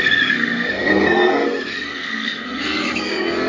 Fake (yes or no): yes